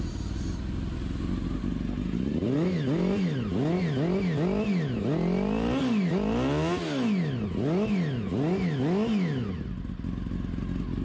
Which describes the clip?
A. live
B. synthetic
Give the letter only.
A